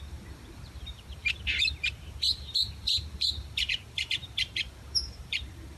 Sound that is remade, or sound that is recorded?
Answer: remade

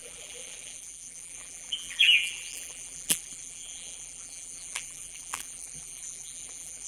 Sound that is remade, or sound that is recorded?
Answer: remade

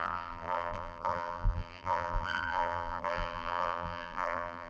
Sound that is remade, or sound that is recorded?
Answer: remade